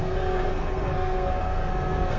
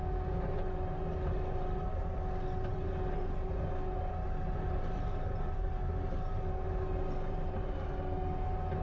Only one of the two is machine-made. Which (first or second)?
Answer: first